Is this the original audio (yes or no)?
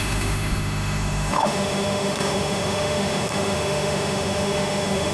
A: no